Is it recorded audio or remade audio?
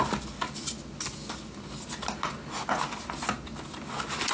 recorded